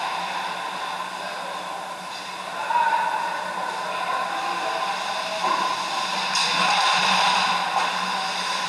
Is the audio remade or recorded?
recorded